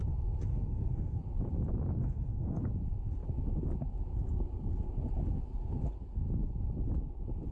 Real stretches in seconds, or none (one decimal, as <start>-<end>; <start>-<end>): 0.0-0.5; 1.2-2.0; 2.6-7.5